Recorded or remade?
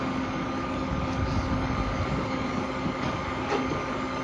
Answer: remade